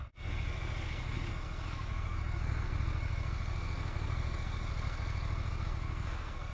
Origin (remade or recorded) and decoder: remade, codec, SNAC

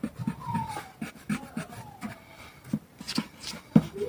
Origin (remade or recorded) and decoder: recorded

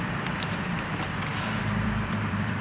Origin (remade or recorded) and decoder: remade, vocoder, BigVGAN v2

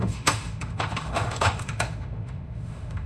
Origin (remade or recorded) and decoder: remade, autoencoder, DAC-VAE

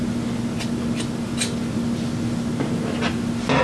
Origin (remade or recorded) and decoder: recorded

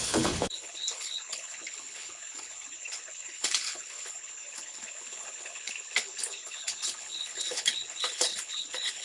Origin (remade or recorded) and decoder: remade, codec, HILCodec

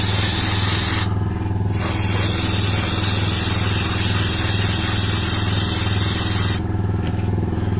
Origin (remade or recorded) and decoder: recorded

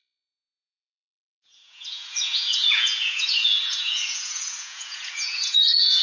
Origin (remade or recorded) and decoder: remade, vocoder, Vocos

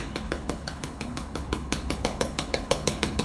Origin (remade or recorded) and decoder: remade, codec, HILCodec